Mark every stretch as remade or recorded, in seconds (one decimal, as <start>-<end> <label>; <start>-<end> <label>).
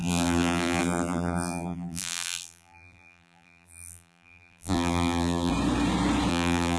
0.0-5.5 remade; 5.5-6.3 recorded; 6.3-6.8 remade